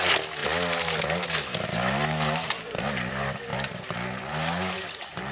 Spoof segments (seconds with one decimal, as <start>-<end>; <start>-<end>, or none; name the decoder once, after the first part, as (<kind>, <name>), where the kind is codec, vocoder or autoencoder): none